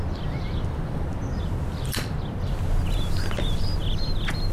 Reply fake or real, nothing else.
real